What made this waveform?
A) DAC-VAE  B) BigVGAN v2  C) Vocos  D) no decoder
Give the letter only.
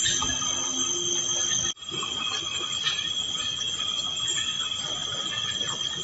D